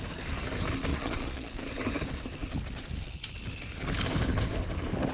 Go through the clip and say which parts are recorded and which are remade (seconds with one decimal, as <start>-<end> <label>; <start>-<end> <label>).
0.0-0.9 recorded; 0.9-1.6 remade; 1.6-5.1 recorded